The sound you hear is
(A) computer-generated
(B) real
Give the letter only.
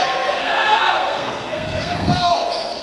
A